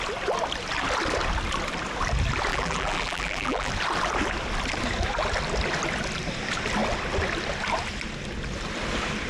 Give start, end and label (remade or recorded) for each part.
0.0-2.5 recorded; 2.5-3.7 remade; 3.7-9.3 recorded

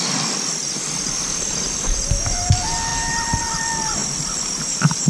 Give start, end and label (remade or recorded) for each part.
0.0-5.1 remade

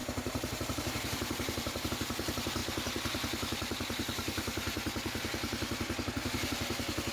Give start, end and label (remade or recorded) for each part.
0.0-1.9 remade; 1.9-7.1 recorded

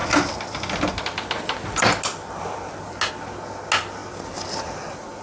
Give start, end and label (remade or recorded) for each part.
0.0-4.0 recorded; 4.0-5.2 remade